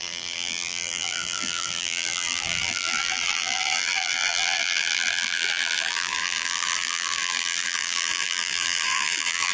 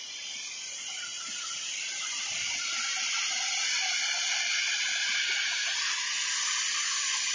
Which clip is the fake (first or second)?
first